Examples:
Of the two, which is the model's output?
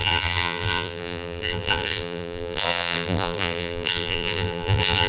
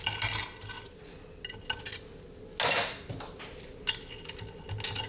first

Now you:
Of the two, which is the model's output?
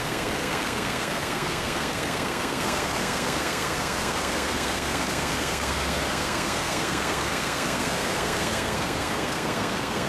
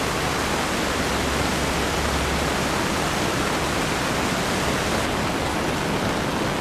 first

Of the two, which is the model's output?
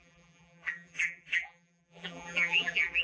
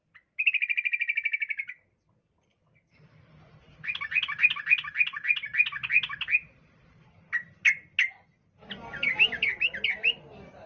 first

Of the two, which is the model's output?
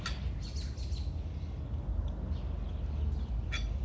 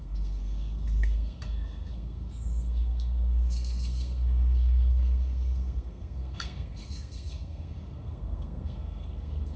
second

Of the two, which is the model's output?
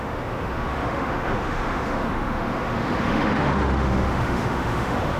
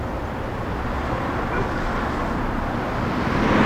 first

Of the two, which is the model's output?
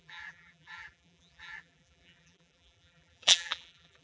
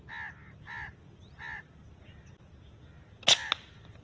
first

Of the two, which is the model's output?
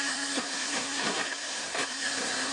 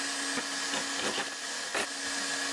first